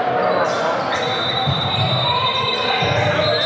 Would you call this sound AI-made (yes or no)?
no